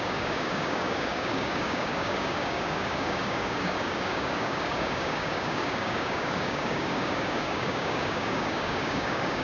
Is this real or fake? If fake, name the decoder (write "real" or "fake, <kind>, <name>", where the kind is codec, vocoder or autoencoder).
fake, codec, DAC